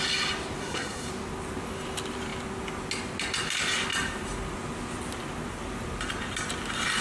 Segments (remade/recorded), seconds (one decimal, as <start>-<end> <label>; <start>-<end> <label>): 0.0-0.6 recorded; 0.6-1.1 remade; 1.1-7.0 recorded